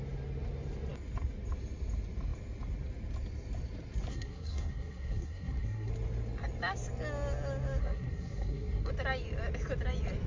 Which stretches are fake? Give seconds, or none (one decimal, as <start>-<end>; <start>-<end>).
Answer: 4.1-5.9; 7.8-8.9